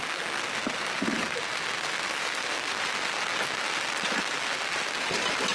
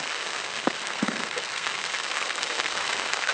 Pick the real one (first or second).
first